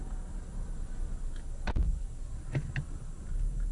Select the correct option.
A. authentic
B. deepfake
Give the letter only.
A